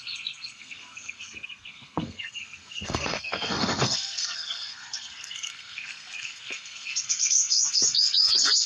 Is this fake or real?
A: fake